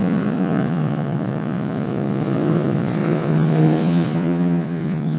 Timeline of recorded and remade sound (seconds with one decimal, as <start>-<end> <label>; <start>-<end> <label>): 0.0-5.2 remade